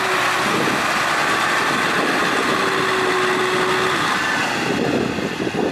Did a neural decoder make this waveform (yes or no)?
no